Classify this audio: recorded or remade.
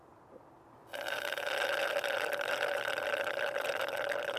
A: recorded